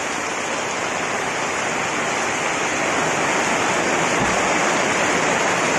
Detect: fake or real real